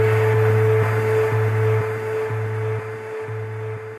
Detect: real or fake real